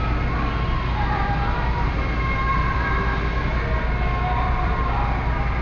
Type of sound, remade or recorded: recorded